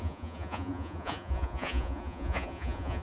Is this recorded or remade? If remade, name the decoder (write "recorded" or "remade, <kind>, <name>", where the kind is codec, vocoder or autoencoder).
remade, vocoder, Vocos